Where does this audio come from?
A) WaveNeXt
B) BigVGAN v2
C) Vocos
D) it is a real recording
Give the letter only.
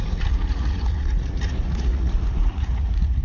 C